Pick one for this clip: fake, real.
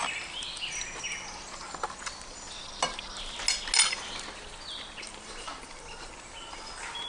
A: real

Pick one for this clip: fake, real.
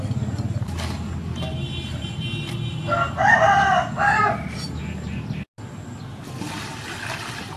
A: real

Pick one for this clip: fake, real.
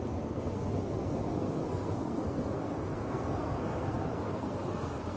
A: fake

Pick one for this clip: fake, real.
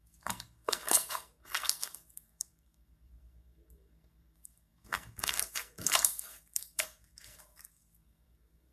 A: fake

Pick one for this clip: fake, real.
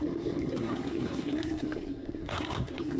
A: fake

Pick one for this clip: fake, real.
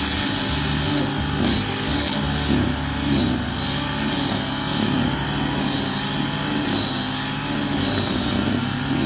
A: real